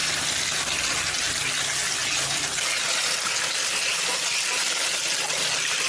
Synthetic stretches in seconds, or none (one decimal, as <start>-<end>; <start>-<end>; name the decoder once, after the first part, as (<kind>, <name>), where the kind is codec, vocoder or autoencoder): none